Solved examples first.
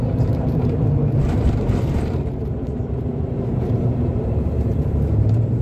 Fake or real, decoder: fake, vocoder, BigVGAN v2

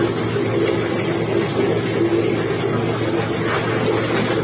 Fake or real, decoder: real